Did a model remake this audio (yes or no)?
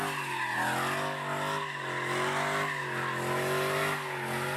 no